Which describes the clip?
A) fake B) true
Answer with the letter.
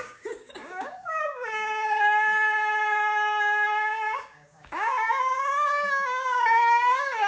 A